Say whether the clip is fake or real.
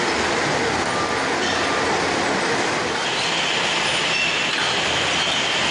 real